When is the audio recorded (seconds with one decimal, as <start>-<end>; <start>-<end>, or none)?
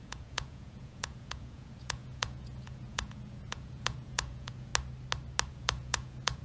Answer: 4.7-5.5